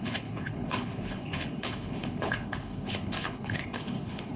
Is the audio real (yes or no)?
no